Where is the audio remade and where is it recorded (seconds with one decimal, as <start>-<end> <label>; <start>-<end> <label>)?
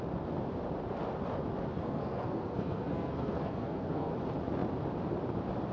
0.0-1.8 recorded; 1.8-4.1 remade; 4.1-5.7 recorded